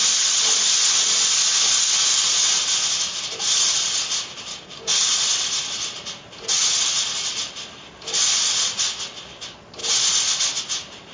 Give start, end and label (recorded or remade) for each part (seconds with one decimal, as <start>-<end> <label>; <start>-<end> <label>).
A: 0.0-4.5 recorded; 4.5-5.1 remade; 5.1-11.1 recorded